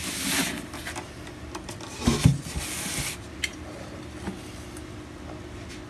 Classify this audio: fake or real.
real